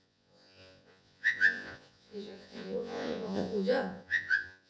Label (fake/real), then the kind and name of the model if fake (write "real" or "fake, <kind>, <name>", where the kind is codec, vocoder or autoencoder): fake, vocoder, Vocos